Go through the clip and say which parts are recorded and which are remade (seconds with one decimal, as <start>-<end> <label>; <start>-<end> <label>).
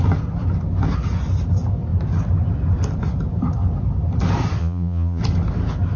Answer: 0.0-4.6 recorded; 4.6-5.2 remade; 5.2-6.0 recorded